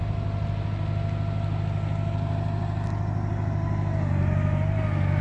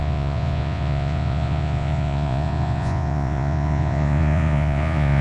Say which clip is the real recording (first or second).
first